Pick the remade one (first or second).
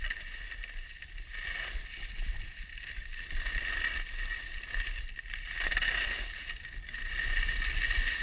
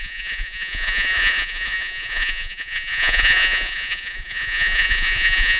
second